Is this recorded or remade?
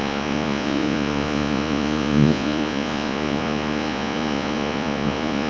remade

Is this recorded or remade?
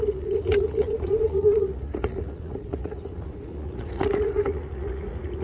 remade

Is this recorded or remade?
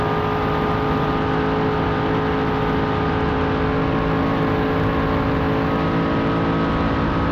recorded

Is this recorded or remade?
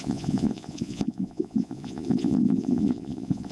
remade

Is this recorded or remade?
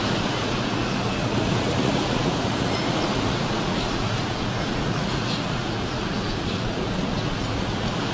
remade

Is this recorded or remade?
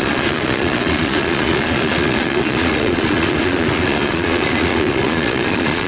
remade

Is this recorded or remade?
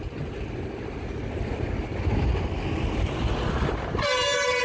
recorded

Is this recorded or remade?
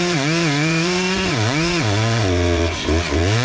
remade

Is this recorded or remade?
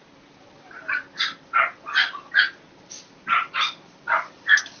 recorded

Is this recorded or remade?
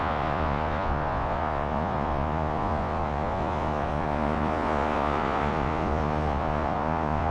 remade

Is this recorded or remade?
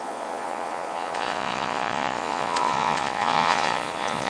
remade